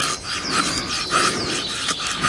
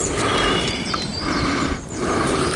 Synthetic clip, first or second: second